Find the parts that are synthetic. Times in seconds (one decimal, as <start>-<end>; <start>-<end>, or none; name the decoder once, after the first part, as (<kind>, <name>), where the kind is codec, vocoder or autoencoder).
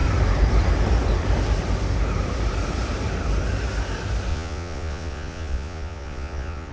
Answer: 4.3-6.7 (vocoder, Vocos)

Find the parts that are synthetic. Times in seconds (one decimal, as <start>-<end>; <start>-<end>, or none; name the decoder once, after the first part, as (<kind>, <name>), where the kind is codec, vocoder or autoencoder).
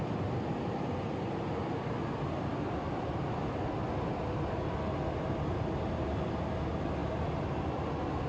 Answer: none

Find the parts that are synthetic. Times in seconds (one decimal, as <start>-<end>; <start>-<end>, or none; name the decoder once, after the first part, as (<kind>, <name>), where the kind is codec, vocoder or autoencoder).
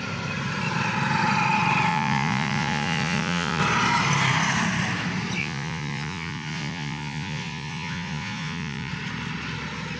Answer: 1.9-3.6 (vocoder, Vocos); 5.4-8.9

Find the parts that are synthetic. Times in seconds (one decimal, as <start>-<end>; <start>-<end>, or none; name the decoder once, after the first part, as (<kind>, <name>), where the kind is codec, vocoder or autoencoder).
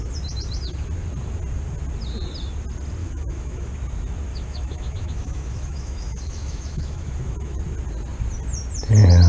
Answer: 3.0-3.7 (autoencoder, DAC-VAE); 4.3-7.6